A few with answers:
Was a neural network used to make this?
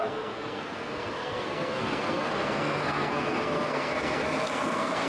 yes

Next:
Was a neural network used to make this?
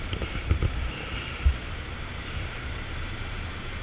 yes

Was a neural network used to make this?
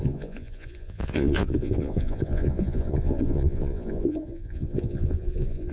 yes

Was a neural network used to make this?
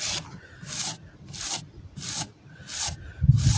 no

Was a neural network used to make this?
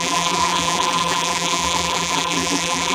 yes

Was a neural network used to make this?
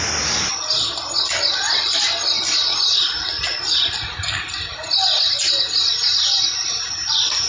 no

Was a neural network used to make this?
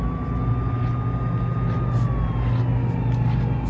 no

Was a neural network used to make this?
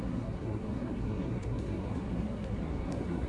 yes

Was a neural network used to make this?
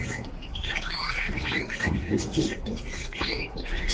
yes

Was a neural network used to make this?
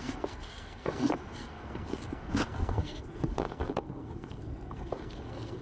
yes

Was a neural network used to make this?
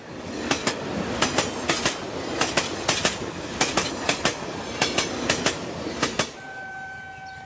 no